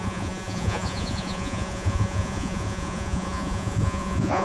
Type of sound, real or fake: fake